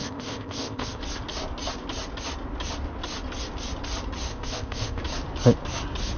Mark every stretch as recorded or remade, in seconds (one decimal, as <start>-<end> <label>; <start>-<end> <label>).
0.0-1.0 remade; 1.0-4.3 recorded; 4.3-5.0 remade; 5.0-6.2 recorded

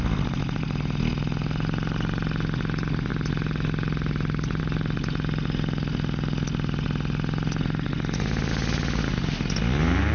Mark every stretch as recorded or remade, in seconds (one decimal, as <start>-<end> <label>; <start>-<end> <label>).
0.0-10.1 recorded

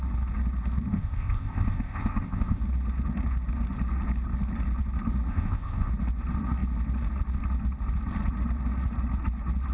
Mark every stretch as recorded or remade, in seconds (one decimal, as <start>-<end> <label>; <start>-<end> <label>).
0.0-0.9 recorded; 0.9-2.6 remade; 2.6-5.3 recorded; 5.3-5.9 remade; 5.9-9.7 recorded